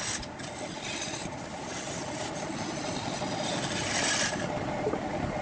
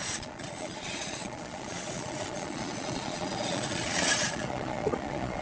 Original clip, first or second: first